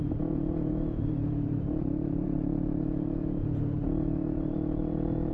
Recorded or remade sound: remade